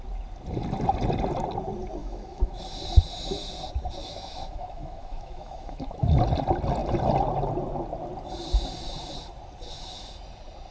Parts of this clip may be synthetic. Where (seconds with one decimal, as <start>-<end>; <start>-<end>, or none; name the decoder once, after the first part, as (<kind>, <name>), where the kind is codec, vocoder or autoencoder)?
2.0-2.6 (autoencoder, DAC-VAE); 4.0-6.2